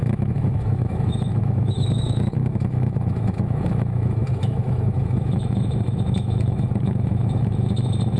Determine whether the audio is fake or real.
fake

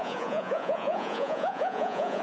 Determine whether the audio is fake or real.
fake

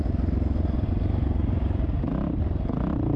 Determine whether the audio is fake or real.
real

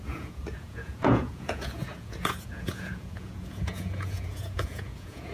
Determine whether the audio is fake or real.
fake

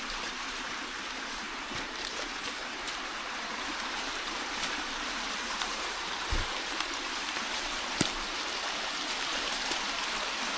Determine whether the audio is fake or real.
fake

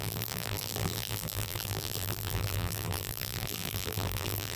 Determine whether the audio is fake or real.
fake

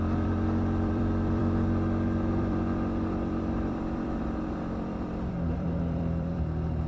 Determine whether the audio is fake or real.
fake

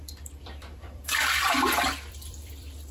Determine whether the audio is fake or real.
fake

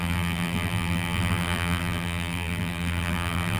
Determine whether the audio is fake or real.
fake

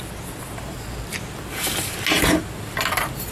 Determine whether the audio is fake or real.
real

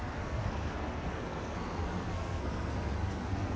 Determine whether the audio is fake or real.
fake